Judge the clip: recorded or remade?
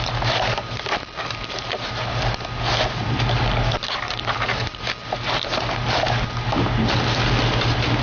recorded